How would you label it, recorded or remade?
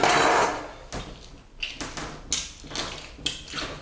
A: recorded